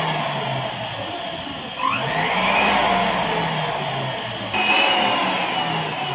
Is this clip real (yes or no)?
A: yes